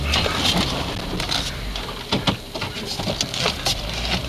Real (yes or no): yes